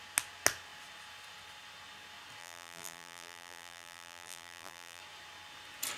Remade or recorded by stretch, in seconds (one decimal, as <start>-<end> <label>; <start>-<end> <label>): 0.0-2.4 recorded; 2.4-5.0 remade; 5.0-6.0 recorded